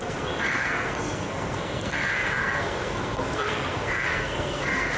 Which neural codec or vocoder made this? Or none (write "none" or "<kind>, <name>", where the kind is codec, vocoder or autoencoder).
codec, SNAC